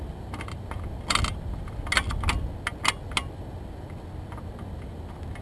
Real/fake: real